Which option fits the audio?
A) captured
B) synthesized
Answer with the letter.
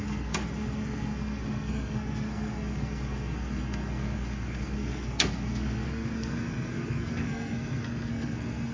B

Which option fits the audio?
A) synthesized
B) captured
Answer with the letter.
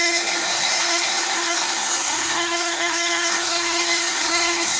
A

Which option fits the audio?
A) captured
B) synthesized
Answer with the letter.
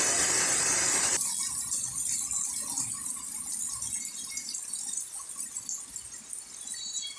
A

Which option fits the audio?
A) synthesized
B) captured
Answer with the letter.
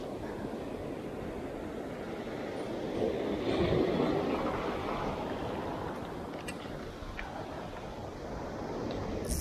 B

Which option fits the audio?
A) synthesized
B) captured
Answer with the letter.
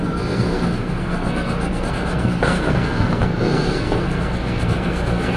A